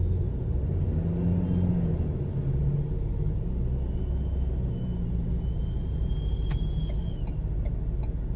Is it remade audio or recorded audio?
recorded